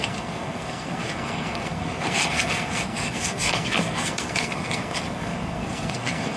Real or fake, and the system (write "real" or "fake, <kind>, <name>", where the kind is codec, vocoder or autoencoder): fake, codec, SNAC